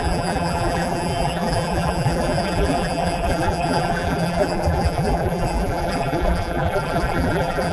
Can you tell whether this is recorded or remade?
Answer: remade